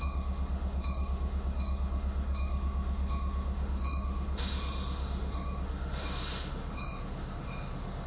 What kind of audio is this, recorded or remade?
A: remade